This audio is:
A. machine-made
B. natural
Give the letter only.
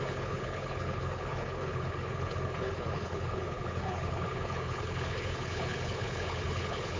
A